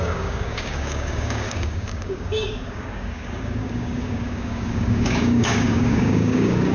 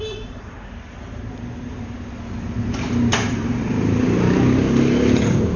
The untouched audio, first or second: second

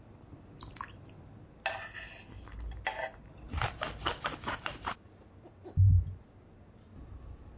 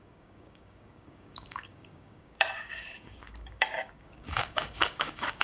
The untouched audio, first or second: first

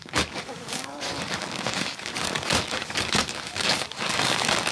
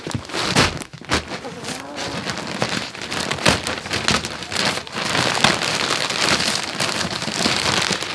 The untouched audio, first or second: second